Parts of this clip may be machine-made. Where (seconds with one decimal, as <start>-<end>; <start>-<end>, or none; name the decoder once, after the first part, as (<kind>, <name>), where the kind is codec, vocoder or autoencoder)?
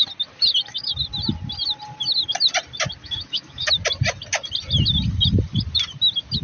3.0-3.7 (autoencoder, DAC-VAE)